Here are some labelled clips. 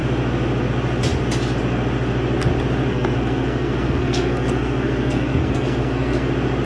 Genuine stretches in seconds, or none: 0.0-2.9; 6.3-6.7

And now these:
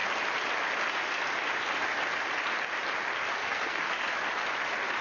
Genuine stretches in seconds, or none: 0.0-3.4; 3.9-5.0

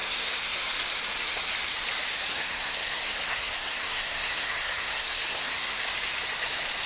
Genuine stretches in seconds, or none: 0.6-2.3; 5.8-6.9

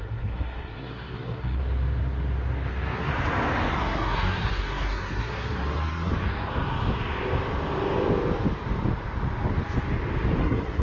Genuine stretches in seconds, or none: 1.6-2.7; 3.1-3.7; 6.1-10.4

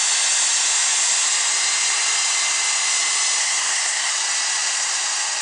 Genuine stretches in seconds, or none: 0.0-3.4; 4.1-5.4

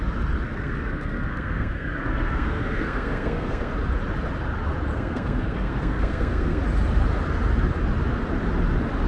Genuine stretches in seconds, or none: 0.0-0.5; 3.7-4.9; 6.6-9.1

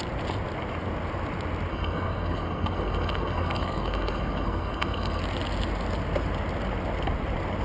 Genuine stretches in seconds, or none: 0.0-1.7; 5.2-7.6

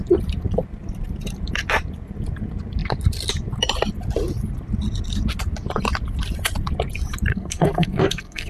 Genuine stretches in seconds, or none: 0.0-7.3